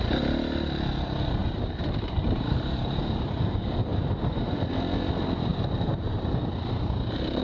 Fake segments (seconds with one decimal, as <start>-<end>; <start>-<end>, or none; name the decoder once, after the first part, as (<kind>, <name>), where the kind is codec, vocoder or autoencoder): 1.4-3.4 (vocoder, BigVGAN v2); 3.9-4.7; 5.5-7.4